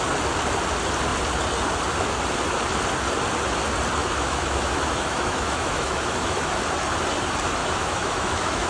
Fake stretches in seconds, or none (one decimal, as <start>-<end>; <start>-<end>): 4.0-6.5; 7.6-8.7